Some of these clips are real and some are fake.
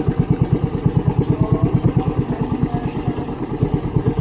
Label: real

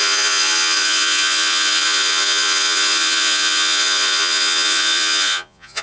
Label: fake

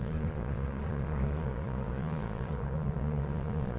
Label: fake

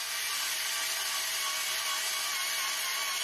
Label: real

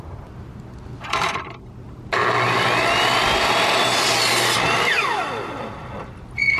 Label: real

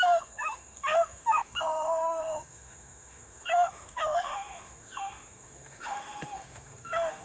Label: fake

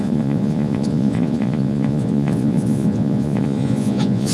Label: fake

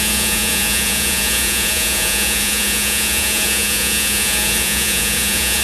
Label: fake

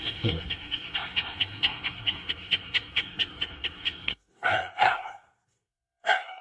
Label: fake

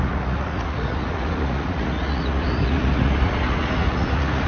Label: fake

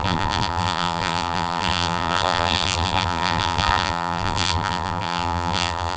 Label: fake